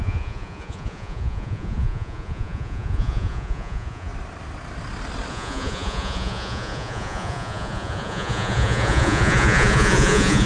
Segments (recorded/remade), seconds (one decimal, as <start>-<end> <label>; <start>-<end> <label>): 0.0-4.1 remade; 4.1-5.3 recorded; 5.3-10.5 remade